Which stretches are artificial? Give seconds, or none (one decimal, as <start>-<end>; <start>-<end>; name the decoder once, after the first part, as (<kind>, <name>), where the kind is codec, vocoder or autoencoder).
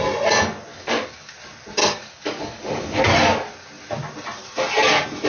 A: 0.7-1.3 (codec, DAC); 1.8-3.0